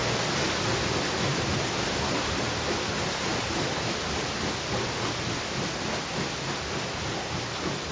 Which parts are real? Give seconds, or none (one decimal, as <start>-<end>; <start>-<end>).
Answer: 0.0-7.9